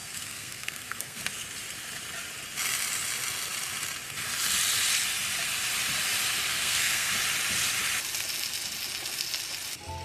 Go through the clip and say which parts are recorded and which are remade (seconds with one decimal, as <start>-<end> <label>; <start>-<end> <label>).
0.0-1.2 remade; 1.2-6.5 recorded; 6.5-7.1 remade; 7.1-10.0 recorded